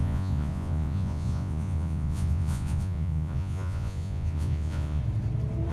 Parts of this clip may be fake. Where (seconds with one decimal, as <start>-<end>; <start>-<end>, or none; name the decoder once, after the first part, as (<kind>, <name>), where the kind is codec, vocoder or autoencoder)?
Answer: 0.0-5.0 (vocoder, Vocos)